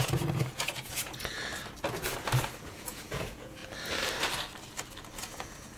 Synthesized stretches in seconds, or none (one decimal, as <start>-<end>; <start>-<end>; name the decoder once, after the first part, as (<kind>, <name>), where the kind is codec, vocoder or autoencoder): 0.0-1.5 (vocoder, Vocos); 2.6-3.6; 5.2-5.8